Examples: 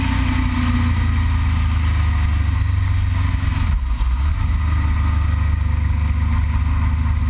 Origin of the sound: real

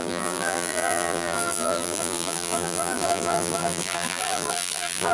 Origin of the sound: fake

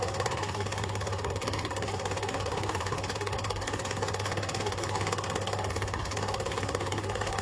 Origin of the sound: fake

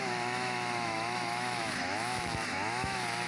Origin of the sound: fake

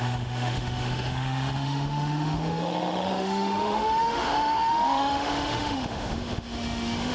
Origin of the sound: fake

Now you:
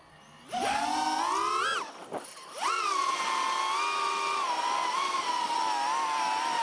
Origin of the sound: real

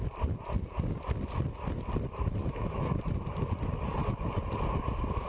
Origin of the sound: fake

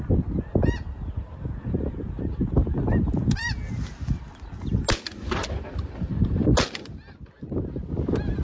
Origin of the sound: real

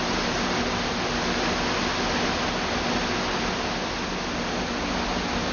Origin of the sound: real